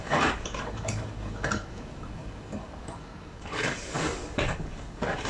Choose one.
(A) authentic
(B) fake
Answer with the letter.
B